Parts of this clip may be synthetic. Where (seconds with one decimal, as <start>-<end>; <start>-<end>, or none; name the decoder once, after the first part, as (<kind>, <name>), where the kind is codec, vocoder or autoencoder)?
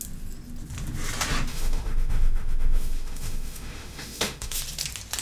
1.5-4.6 (autoencoder, DAC-VAE)